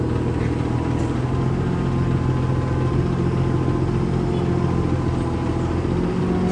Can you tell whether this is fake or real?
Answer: real